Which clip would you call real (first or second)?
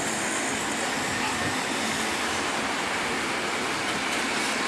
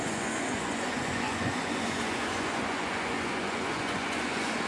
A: first